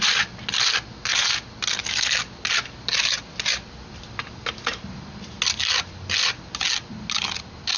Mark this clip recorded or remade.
recorded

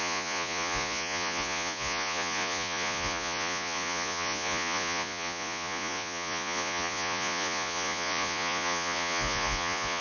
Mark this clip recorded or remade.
remade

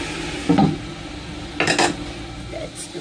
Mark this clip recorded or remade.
recorded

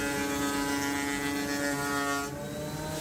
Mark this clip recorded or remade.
recorded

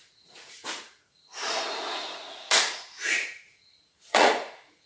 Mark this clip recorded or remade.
remade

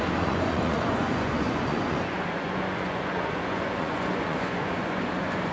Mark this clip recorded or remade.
remade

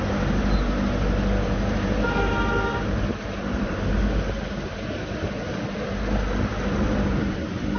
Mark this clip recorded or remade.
recorded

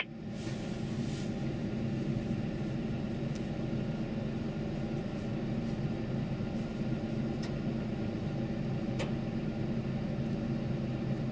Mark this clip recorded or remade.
recorded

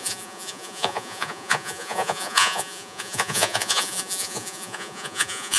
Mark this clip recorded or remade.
remade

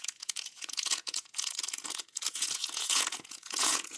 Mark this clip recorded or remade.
remade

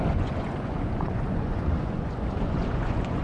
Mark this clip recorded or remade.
remade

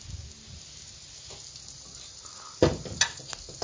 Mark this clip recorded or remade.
recorded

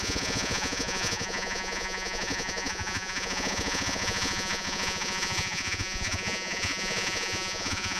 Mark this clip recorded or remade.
remade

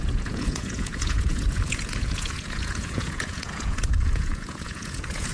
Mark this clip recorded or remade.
remade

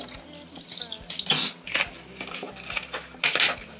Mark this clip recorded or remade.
recorded